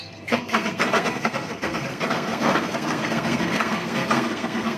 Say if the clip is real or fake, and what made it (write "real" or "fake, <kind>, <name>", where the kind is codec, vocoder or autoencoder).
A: fake, codec, SNAC